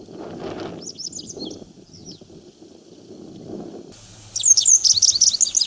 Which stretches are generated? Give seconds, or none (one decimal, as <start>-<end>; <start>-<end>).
none